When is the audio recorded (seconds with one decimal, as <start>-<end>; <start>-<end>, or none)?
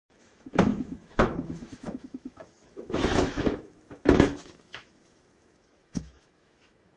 none